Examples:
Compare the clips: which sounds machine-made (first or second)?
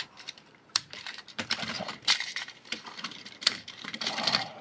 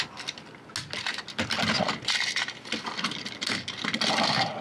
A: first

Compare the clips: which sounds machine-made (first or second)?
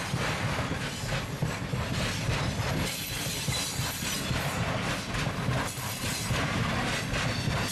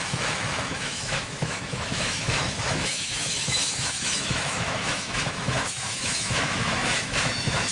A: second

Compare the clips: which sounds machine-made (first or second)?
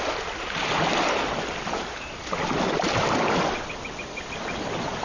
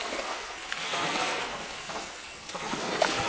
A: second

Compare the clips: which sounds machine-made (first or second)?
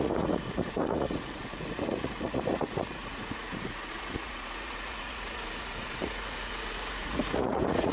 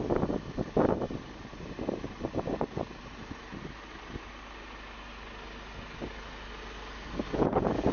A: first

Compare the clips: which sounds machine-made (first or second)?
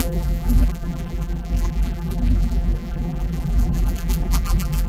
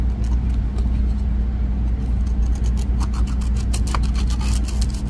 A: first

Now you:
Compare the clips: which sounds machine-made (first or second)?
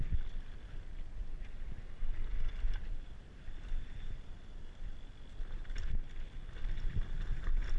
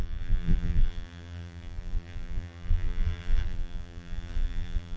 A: second